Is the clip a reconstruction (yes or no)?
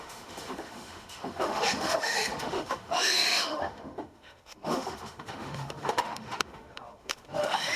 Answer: yes